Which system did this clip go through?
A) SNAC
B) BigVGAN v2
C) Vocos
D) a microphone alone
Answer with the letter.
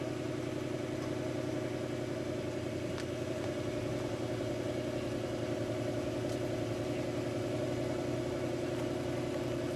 D